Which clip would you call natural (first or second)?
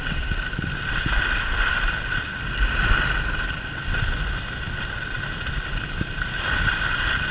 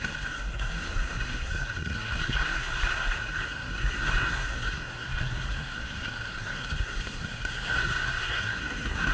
first